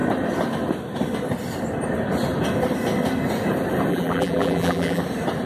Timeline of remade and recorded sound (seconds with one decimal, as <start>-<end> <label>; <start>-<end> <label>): 0.0-3.9 recorded; 3.9-5.0 remade; 5.0-5.5 recorded